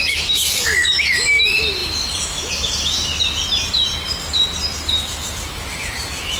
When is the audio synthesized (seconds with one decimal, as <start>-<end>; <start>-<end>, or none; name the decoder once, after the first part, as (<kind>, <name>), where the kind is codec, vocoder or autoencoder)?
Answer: 0.0-3.1 (autoencoder, DAC-VAE); 5.0-6.4